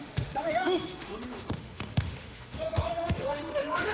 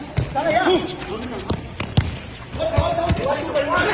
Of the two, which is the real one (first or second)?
second